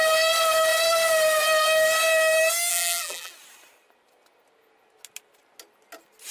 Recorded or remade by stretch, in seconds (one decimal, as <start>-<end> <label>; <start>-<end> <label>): 0.0-2.7 recorded; 2.7-3.3 remade; 3.3-6.3 recorded